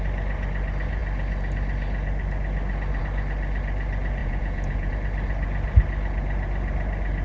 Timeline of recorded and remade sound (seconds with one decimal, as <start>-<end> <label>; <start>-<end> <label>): 0.0-4.2 recorded; 4.2-4.9 remade; 4.9-7.2 recorded